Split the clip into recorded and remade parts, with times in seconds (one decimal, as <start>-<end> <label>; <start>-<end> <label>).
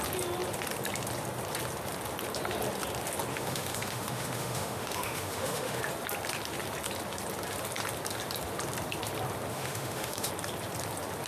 0.0-3.3 recorded; 3.3-5.8 remade; 5.8-9.5 recorded; 9.5-10.3 remade; 10.3-11.3 recorded